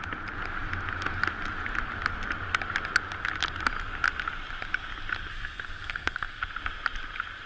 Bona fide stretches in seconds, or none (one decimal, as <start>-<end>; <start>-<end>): 0.0-5.3; 6.4-7.5